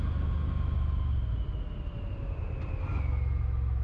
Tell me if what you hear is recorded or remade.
recorded